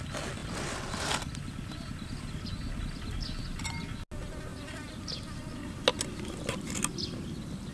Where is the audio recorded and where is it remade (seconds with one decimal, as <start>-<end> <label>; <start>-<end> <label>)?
0.0-7.7 recorded